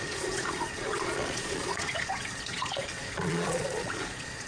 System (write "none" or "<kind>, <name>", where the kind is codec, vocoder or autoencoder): vocoder, Vocos